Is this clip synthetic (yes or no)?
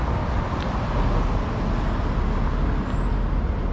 no